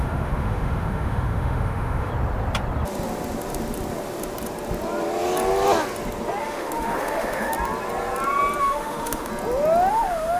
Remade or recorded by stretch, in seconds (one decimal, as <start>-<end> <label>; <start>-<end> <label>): 0.0-2.1 remade; 2.1-6.4 recorded; 6.4-7.5 remade; 7.5-8.6 recorded; 8.6-9.3 remade; 9.3-9.9 recorded; 9.9-10.4 remade

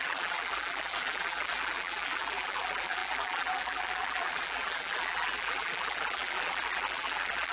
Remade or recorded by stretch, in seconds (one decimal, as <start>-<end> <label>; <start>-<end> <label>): 0.0-7.5 remade

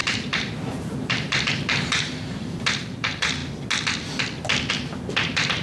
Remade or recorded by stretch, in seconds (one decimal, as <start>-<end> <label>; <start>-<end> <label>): 0.0-3.4 remade; 3.4-4.7 recorded; 4.7-5.6 remade

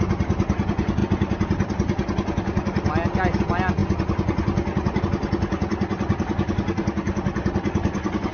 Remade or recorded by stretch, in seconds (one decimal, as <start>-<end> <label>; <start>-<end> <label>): 0.0-8.3 recorded

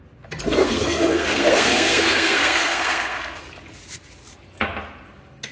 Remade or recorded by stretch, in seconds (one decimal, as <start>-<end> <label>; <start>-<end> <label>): 0.0-0.6 recorded; 0.6-3.4 remade; 3.4-5.5 recorded

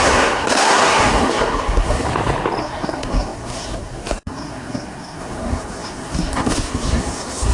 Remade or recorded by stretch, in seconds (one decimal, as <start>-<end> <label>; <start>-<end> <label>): 0.0-2.1 remade; 2.1-2.6 recorded; 2.6-7.5 remade

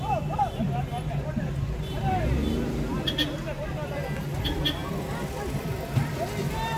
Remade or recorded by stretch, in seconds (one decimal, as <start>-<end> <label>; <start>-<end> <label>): 0.0-6.8 recorded